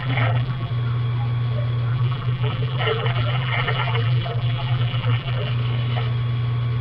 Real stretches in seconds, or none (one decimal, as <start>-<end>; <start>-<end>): 0.7-1.9; 5.5-6.8